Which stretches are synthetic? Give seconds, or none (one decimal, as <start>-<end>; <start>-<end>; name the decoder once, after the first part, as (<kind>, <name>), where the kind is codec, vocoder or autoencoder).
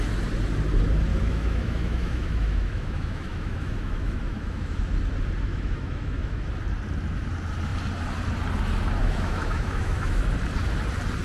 1.1-4.8 (autoencoder, DAC-VAE); 5.5-6.5; 9.0-10.3